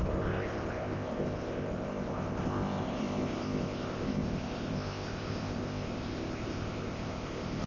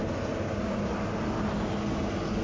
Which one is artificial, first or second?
first